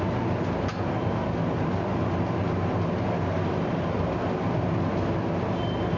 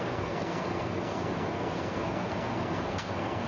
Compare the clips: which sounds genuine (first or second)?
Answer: first